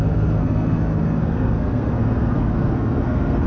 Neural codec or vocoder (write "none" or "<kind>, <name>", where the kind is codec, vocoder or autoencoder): codec, SNAC